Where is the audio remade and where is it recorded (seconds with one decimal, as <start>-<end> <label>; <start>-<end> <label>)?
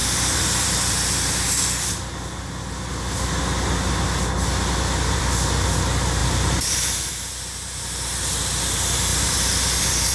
0.0-6.2 recorded; 6.2-7.1 remade; 7.1-9.1 recorded; 9.1-10.1 remade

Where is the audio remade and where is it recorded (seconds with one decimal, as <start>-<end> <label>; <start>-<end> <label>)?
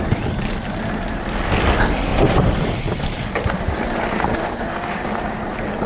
0.0-2.1 recorded; 2.1-2.8 remade; 2.8-5.9 recorded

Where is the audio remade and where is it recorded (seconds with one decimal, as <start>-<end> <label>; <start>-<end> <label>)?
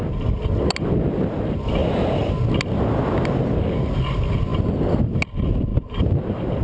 0.0-4.5 recorded; 4.5-5.1 remade; 5.1-5.7 recorded; 5.7-6.6 remade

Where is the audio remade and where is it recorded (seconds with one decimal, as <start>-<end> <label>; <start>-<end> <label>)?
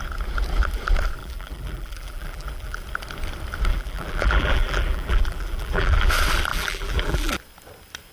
0.0-1.2 recorded; 1.2-2.8 remade; 2.8-3.7 recorded; 3.7-6.1 remade; 6.1-6.5 recorded; 6.5-7.4 remade; 7.4-8.1 recorded